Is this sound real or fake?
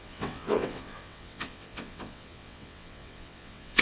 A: fake